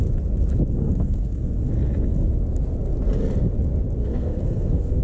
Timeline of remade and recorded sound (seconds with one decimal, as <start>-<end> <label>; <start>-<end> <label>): 0.0-0.8 recorded; 0.8-1.7 remade; 1.7-4.0 recorded; 4.0-5.0 remade